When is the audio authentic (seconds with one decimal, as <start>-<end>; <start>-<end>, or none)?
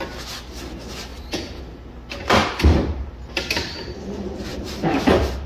0.0-1.1; 1.6-2.4; 3.1-4.5; 5.0-5.5